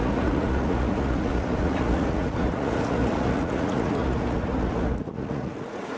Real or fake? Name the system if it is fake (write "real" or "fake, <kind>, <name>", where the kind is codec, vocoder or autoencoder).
fake, vocoder, Vocos